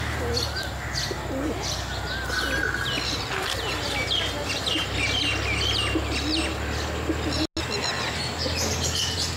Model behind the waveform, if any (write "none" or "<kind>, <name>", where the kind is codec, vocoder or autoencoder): none